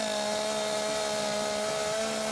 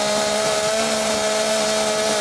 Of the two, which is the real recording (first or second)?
first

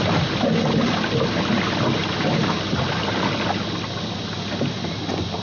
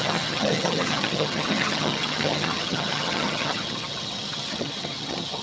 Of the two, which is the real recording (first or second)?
first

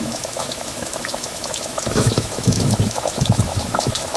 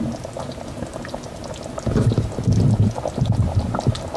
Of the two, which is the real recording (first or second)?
second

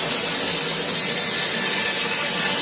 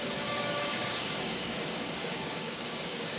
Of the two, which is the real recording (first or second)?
first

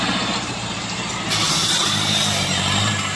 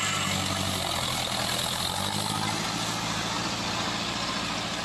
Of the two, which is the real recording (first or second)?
second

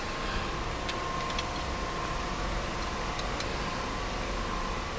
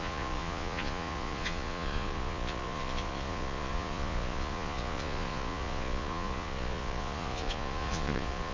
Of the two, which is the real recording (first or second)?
first